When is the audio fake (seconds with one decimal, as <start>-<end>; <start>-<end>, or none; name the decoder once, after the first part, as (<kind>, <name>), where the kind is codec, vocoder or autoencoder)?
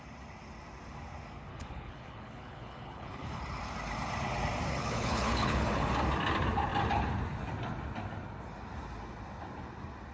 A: 1.5-3.4 (codec, HILCodec); 4.8-5.9